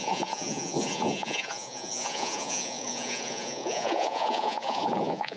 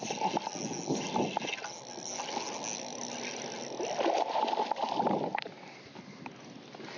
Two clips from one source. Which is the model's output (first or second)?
first